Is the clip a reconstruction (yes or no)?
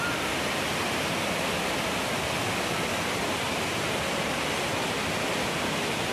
no